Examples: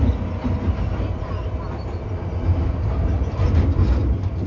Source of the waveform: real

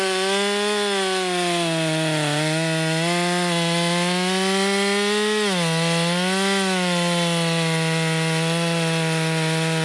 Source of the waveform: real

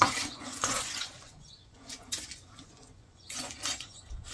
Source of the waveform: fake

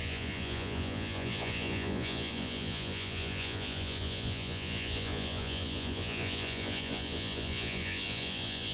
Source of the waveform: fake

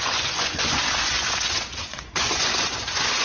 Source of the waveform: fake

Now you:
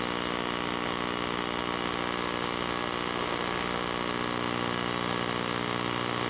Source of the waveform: real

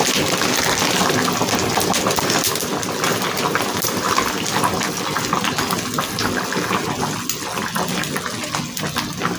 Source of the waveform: real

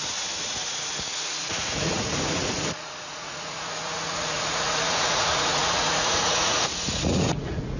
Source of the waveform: fake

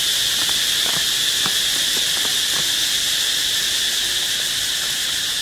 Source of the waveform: real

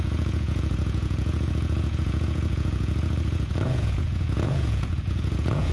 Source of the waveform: fake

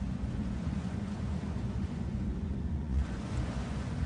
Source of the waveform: fake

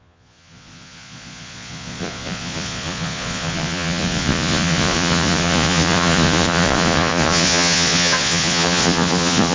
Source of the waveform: fake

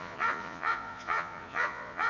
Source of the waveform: fake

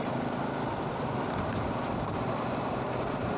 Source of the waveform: real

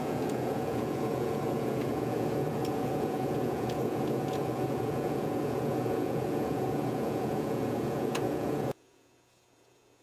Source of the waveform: fake